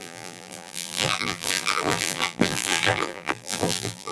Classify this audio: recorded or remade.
remade